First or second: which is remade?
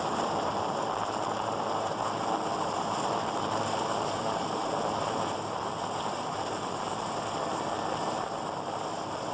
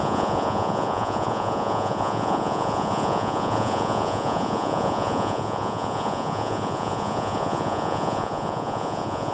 second